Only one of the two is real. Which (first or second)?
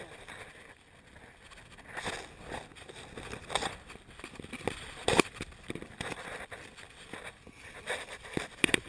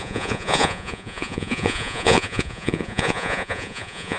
first